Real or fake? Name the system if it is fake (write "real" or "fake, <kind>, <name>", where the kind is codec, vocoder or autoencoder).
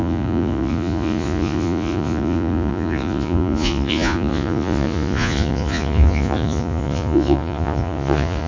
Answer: fake, vocoder, Vocos